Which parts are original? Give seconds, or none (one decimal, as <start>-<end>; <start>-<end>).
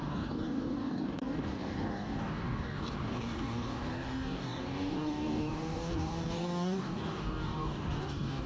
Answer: none